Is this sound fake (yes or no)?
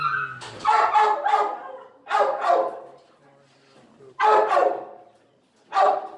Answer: no